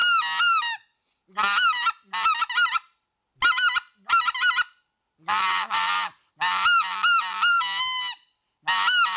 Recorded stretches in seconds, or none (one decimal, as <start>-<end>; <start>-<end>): 0.0-9.2